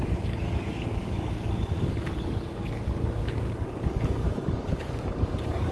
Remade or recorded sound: remade